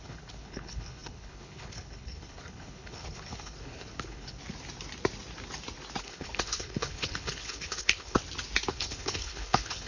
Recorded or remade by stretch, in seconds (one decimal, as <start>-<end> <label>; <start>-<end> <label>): 0.0-4.4 remade; 4.4-6.0 recorded; 6.0-8.2 remade; 8.2-8.7 recorded; 8.7-9.9 remade